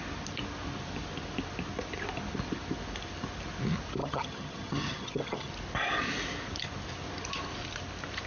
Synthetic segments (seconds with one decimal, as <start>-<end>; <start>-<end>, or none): 4.0-5.5